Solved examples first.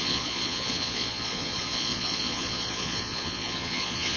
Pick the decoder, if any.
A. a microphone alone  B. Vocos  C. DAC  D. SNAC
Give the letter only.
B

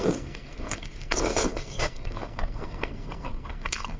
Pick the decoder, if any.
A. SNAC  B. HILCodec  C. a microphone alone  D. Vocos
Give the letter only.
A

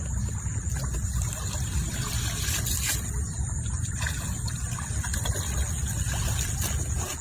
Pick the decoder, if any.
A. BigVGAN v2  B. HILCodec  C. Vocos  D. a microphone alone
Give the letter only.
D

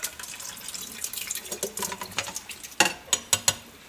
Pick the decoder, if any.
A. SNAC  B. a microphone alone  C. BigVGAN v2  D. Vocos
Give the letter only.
B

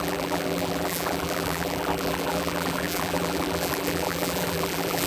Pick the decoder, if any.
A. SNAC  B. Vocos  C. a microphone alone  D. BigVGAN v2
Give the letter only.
D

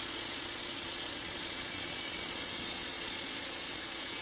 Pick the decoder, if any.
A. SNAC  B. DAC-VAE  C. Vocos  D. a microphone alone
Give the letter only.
C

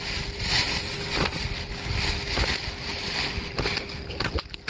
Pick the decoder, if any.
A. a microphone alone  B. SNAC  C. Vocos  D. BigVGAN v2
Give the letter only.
A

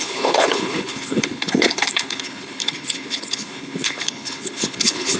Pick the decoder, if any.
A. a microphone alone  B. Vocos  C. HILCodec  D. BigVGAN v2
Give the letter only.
C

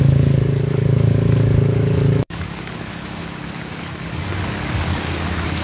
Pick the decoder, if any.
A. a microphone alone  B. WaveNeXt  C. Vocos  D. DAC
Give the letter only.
D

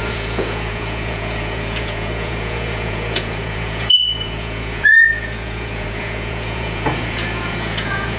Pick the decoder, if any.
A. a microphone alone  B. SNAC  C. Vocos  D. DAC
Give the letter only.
C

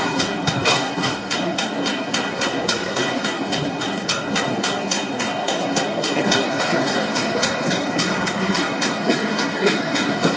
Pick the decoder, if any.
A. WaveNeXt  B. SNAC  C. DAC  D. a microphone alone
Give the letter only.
B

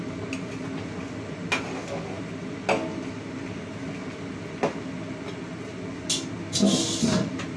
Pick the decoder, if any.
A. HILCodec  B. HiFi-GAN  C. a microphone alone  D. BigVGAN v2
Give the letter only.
C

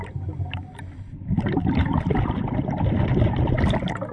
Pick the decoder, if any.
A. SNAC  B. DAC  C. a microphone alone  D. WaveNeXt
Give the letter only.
C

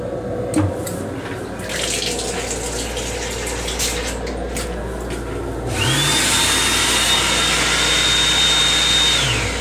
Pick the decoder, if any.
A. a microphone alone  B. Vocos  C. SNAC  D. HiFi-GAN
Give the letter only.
A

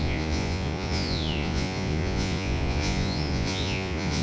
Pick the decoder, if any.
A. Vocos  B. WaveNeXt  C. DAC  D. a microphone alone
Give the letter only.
A